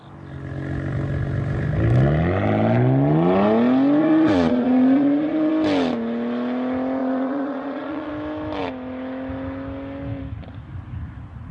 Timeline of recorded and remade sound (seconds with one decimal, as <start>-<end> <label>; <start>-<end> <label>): 0.0-4.0 recorded; 4.0-5.5 remade; 5.5-7.0 recorded; 7.0-8.1 remade; 8.1-11.5 recorded